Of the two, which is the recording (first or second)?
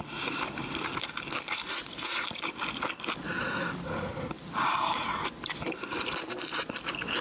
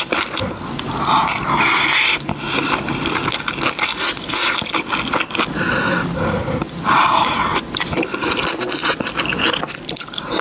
second